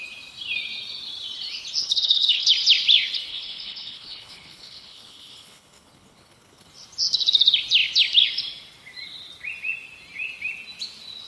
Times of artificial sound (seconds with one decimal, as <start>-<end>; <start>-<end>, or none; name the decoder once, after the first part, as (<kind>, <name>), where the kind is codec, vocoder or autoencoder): 1.8-2.5 (codec, HILCodec); 3.3-6.7